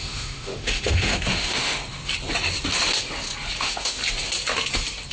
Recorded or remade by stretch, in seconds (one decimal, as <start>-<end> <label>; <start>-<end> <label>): 0.0-1.8 remade; 1.8-3.6 recorded; 3.6-4.0 remade; 4.0-5.1 recorded